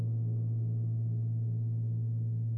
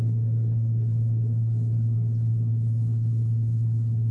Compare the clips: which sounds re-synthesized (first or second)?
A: second